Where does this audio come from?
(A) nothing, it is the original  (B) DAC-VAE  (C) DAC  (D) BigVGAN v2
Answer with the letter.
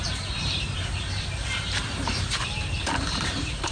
D